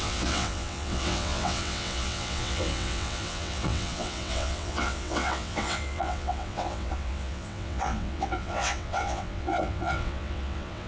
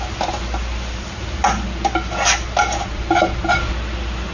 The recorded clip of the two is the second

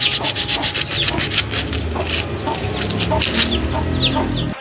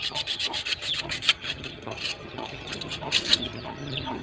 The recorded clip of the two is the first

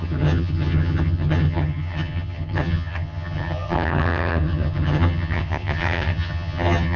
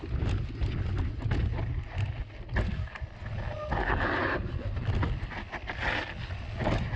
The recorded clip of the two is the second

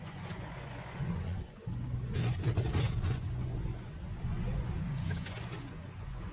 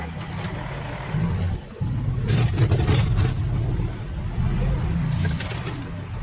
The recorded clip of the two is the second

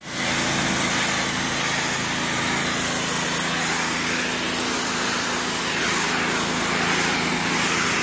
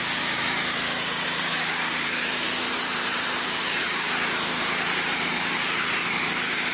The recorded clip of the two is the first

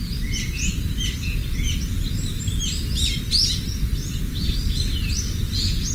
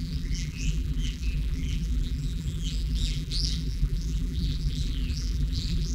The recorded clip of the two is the first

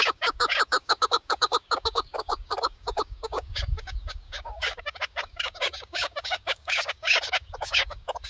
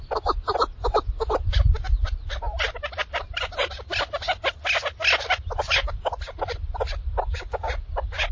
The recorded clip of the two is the second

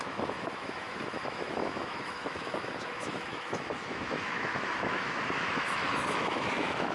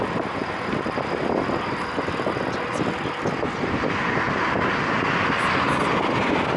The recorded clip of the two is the second